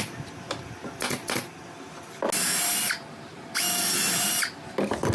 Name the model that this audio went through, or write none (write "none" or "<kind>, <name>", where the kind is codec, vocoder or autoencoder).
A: none